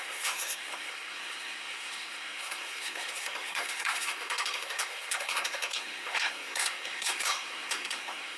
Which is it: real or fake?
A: fake